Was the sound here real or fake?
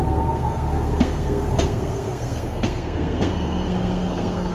fake